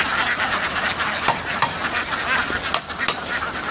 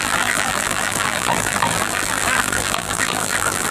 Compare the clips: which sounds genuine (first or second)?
first